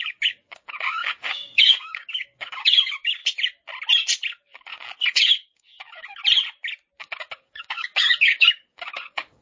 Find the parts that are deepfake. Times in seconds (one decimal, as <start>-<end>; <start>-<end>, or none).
0.0-3.2; 4.3-6.2; 7.0-9.4